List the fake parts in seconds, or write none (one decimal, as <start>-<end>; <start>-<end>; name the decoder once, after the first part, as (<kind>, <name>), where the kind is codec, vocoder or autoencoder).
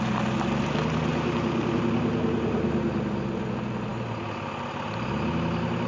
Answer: 1.1-1.7 (vocoder, BigVGAN v2)